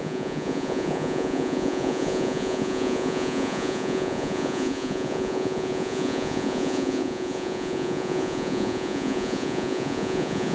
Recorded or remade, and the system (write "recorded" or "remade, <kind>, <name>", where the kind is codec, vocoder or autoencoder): remade, vocoder, Vocos